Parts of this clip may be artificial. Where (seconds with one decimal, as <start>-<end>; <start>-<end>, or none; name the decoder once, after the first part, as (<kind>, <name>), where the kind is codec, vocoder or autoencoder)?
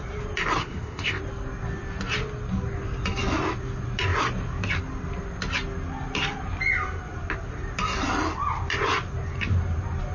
0.6-1.2 (codec, ZipCodec)